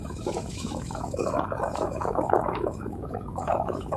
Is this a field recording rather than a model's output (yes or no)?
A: no